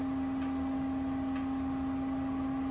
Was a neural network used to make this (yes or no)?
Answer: no